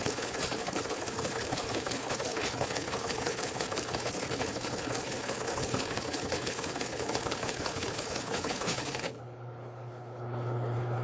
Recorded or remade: remade